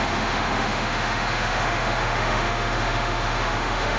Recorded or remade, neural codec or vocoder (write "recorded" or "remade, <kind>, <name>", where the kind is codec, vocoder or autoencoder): remade, autoencoder, DAC-VAE